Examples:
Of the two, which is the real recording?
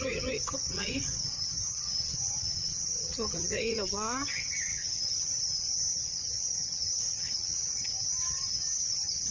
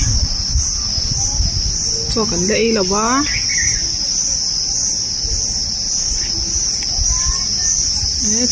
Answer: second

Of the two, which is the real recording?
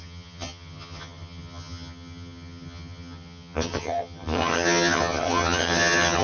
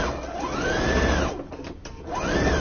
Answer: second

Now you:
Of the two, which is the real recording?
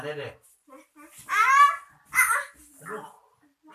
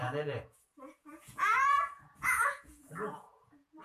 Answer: first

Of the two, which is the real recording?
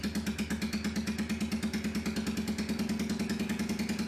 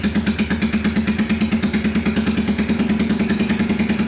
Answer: first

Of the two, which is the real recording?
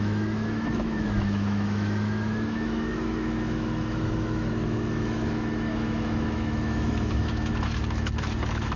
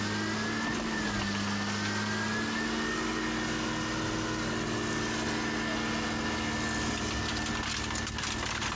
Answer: second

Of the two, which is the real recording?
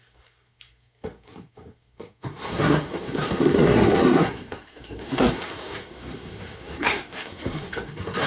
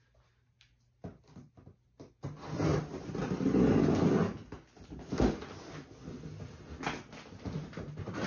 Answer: second